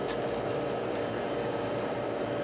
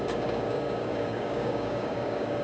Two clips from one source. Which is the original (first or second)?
first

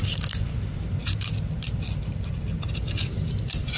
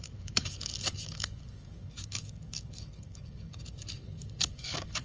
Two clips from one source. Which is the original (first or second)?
first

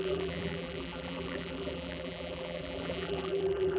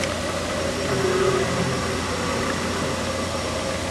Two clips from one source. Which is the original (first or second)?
second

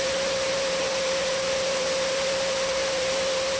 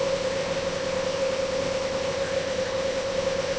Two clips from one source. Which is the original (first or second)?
first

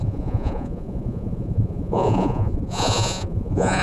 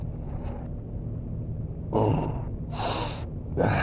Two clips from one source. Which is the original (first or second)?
second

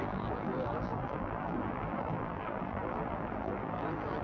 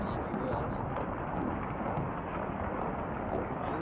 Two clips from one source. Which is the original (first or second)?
second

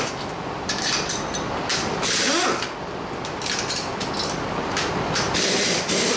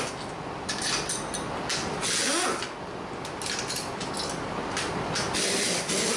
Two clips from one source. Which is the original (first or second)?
second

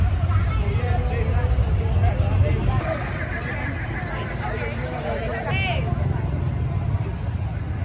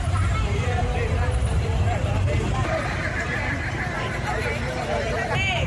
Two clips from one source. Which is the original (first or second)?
first